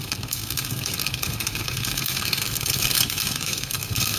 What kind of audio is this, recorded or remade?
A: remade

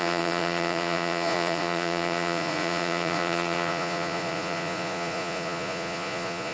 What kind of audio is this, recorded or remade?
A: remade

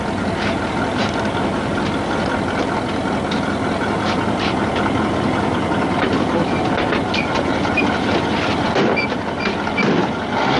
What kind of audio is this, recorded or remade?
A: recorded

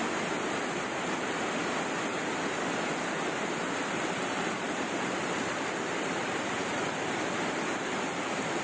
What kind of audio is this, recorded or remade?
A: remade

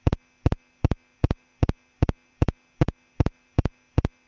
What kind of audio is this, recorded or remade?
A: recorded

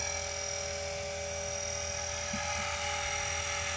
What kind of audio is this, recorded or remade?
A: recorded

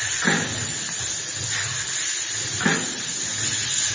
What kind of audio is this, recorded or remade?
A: recorded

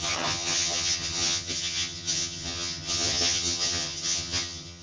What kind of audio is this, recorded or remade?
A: remade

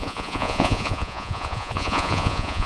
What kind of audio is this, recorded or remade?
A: remade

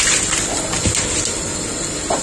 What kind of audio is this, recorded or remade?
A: recorded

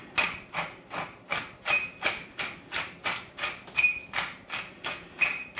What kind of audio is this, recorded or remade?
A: recorded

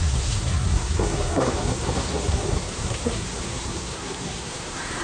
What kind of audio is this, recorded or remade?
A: remade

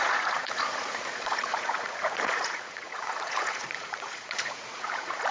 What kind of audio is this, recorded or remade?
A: remade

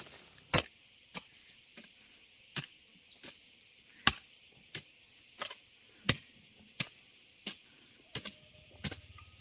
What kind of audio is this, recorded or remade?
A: recorded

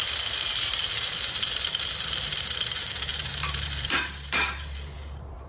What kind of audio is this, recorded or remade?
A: remade